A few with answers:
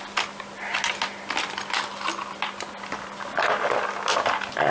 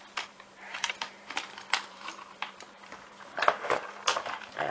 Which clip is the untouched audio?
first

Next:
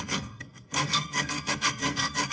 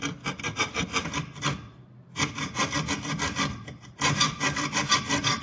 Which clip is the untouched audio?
second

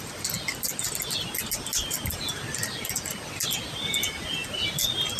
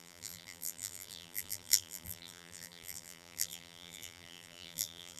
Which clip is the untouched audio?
first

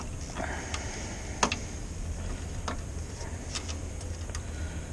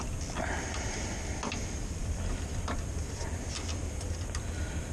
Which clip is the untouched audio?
first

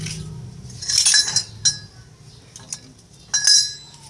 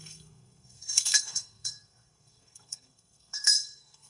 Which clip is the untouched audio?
first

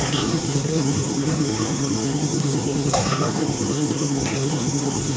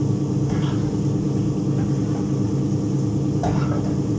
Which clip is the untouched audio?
second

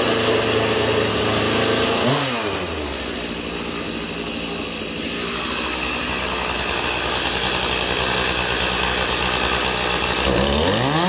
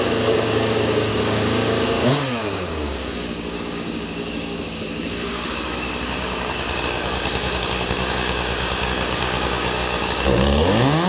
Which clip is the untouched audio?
first